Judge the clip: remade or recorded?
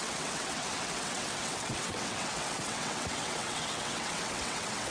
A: remade